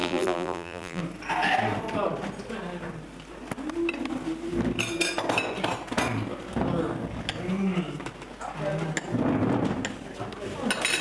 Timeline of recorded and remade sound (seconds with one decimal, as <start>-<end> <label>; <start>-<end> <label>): 0.0-1.0 remade; 1.0-11.0 recorded